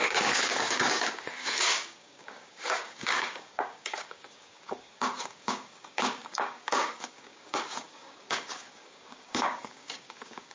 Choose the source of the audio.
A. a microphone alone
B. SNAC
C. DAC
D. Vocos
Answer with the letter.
C